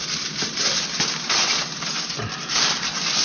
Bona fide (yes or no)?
yes